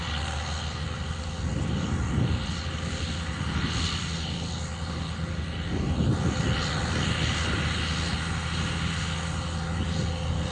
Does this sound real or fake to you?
real